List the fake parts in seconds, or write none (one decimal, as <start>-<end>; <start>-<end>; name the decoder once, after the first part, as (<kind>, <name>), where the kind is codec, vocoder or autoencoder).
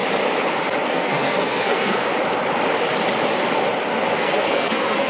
0.9-2.1 (codec, SNAC); 4.2-5.1